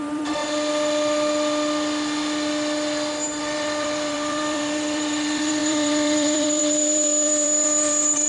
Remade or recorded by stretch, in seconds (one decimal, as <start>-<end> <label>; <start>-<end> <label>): 0.0-0.4 remade; 0.4-3.4 recorded; 3.4-8.3 remade